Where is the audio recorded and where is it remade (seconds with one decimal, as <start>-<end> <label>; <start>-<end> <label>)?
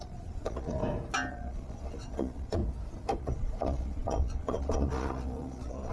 0.0-0.8 remade; 0.8-1.3 recorded; 1.3-2.6 remade; 2.6-3.2 recorded; 3.2-5.9 remade